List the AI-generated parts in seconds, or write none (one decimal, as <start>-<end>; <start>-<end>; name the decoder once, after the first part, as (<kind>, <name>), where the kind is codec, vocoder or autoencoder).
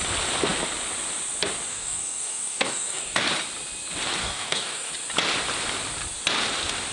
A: 1.7-3.3 (codec, DAC); 4.2-4.9